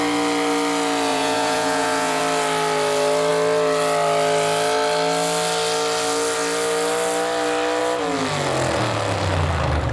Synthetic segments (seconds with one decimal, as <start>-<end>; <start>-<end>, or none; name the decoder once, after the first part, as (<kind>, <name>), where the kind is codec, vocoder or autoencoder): 1.1-2.2 (vocoder, Vocos)